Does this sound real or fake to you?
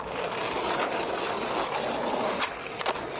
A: real